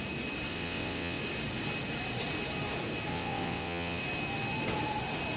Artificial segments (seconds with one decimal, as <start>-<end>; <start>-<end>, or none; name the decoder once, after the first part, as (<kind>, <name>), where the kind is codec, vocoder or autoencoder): 0.5-1.2 (vocoder, WaveNeXt); 3.1-4.0